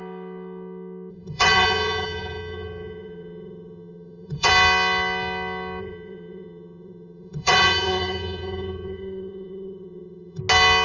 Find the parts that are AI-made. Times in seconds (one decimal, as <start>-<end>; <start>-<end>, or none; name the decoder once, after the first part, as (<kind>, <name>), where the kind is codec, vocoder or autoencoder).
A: 1.1-4.5 (vocoder, HiFi-GAN); 5.8-10.4